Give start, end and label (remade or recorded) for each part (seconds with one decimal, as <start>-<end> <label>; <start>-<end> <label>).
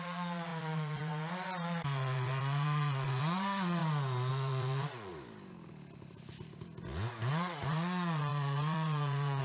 0.0-3.8 remade; 3.8-4.3 recorded; 4.3-5.1 remade; 5.1-7.3 recorded; 7.3-9.4 remade